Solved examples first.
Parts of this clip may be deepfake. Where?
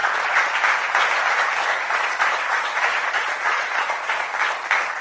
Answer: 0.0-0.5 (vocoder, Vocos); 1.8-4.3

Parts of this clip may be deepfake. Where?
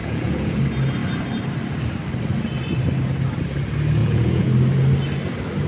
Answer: 0.0-0.6 (vocoder, Vocos); 4.0-4.5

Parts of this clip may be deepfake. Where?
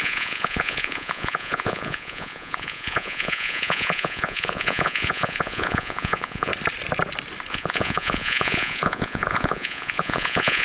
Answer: 0.0-6.5 (vocoder, Vocos); 7.5-10.6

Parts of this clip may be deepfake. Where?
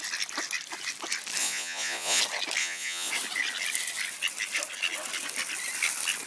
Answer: 1.4-2.2 (vocoder, Vocos); 2.6-3.1